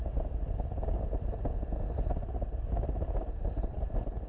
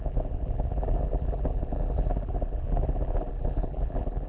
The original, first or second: first